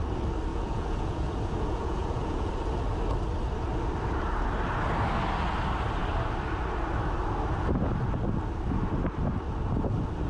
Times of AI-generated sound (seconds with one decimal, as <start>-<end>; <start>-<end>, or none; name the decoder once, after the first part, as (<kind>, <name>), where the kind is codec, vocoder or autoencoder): 0.5-2.5 (vocoder, Vocos)